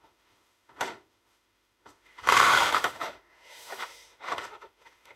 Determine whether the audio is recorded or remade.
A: remade